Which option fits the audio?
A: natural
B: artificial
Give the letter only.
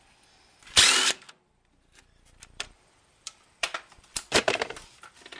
B